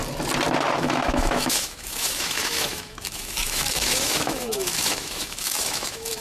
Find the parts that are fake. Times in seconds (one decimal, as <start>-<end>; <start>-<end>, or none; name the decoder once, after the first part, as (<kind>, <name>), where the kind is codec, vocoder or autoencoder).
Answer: 0.8-6.2 (autoencoder, DAC-VAE)